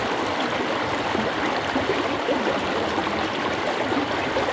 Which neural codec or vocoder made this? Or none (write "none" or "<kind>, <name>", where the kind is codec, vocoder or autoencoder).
none